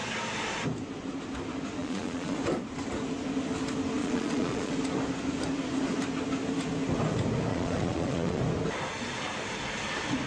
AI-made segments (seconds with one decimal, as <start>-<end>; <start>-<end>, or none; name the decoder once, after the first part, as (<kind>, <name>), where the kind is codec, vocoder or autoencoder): 1.8-2.4 (vocoder, Vocos); 4.0-4.7; 7.5-8.4

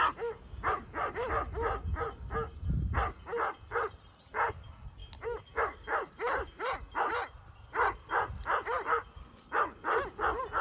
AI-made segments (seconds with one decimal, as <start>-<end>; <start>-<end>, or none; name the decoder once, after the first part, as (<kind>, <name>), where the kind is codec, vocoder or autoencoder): none

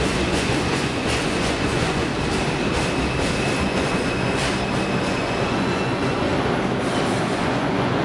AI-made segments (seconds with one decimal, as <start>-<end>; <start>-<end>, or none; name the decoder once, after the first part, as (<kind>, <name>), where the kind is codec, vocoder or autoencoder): 0.0-2.1 (vocoder, Vocos); 3.6-4.4; 5.0-6.3; 7.2-8.0

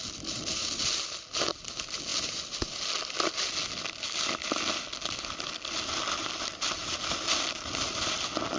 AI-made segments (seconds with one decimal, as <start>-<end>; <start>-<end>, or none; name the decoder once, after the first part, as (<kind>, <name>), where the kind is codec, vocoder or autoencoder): none

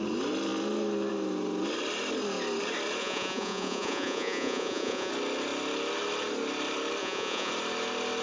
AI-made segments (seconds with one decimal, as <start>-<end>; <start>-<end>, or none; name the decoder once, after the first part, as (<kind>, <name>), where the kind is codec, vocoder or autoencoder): 3.0-5.1 (vocoder, Vocos); 7.0-7.5

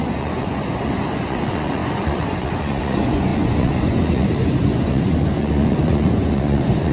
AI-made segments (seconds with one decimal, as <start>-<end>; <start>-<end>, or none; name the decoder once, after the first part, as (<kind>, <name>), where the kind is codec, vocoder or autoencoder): 0.0-6.9 (vocoder, Vocos)

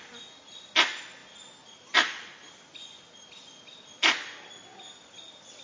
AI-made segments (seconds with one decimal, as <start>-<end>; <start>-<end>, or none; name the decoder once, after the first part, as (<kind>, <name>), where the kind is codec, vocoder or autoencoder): none

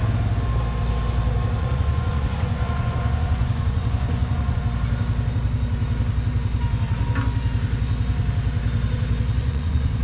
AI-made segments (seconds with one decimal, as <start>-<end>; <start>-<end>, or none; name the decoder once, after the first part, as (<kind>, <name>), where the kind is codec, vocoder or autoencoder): 1.6-4.6 (vocoder, Vocos); 9.4-10.0